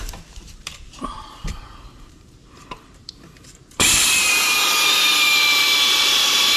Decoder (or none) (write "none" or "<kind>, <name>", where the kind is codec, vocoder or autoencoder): vocoder, BigVGAN v2